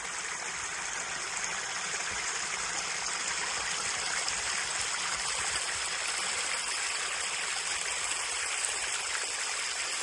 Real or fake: real